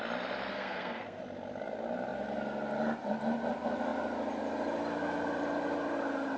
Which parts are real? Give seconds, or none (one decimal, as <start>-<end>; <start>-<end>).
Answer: 0.0-0.5; 1.2-6.4